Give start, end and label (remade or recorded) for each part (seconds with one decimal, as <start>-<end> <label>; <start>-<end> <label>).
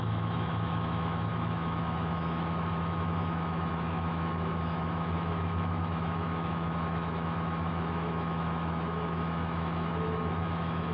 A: 0.0-10.9 remade